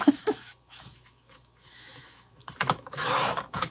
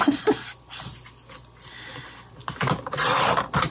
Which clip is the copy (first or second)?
first